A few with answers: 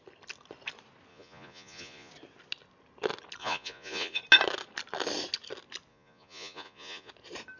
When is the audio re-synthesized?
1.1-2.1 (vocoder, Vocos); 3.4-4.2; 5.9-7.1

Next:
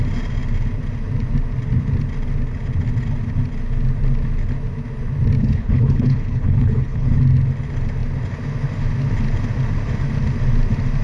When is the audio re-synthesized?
5.4-7.2 (codec, HILCodec)

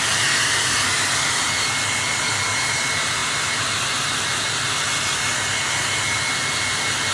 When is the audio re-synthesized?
none

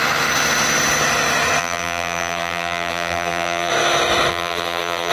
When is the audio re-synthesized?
1.6-3.7 (vocoder, BigVGAN v2); 4.3-5.1

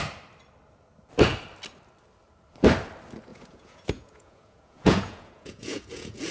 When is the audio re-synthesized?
3.3-6.3 (vocoder, Vocos)

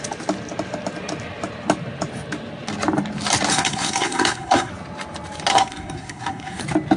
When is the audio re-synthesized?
3.5-4.7 (codec, SNAC); 5.5-6.6